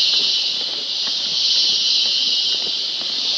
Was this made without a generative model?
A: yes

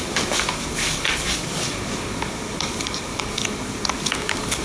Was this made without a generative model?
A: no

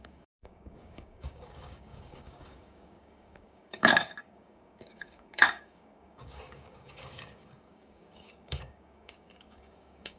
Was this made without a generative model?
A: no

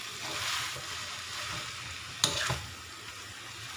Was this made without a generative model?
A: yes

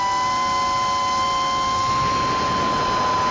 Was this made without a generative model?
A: yes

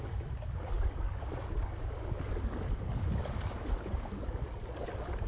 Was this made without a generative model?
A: no